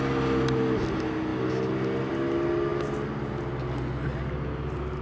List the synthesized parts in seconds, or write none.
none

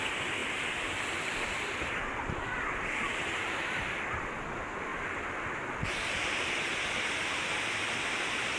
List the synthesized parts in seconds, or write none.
0.4-3.8; 4.9-5.9

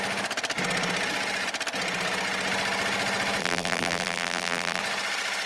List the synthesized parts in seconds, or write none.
3.4-4.8

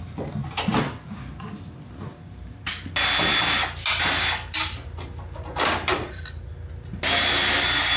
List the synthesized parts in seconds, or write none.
5.9-6.5